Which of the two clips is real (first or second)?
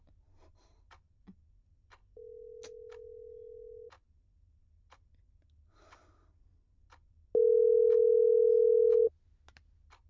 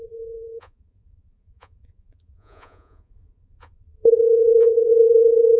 first